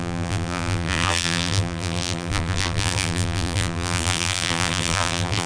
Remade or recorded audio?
remade